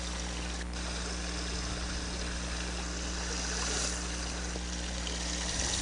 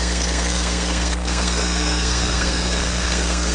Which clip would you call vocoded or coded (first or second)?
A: second